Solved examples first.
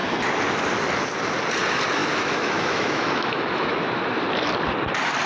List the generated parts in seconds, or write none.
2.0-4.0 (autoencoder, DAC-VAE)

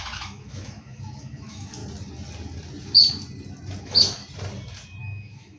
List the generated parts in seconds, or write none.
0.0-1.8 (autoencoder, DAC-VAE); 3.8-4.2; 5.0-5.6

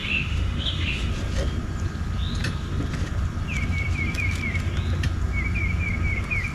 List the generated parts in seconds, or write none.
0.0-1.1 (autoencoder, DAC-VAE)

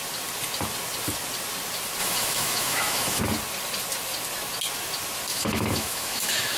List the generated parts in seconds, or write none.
2.0-3.2 (autoencoder, DAC-VAE); 5.3-6.6

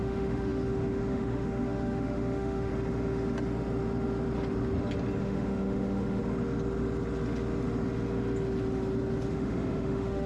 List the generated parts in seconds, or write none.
0.0-2.7 (autoencoder, DAC-VAE); 5.2-6.2; 9.3-10.3